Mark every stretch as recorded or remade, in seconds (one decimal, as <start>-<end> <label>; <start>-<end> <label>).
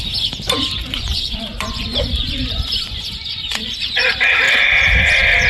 0.0-0.8 recorded; 0.8-4.1 remade; 4.1-5.5 recorded